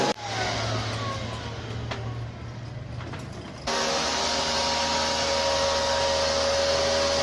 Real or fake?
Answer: real